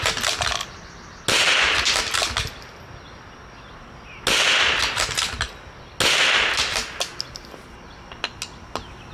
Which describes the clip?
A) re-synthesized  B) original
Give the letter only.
B